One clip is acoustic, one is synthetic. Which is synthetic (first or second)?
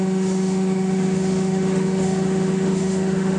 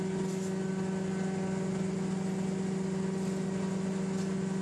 first